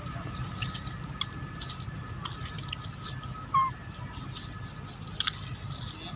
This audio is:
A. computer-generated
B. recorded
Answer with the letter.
B